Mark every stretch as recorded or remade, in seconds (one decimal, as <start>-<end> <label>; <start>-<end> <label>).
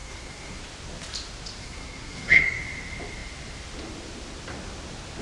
0.0-0.6 remade; 0.6-1.6 recorded; 1.6-2.6 remade; 2.6-5.2 recorded